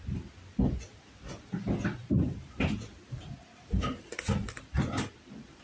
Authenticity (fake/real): real